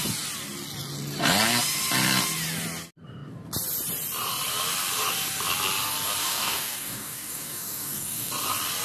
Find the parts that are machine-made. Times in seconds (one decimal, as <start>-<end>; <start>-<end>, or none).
6.2-8.3